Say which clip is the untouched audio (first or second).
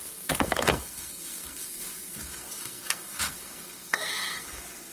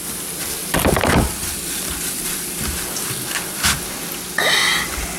second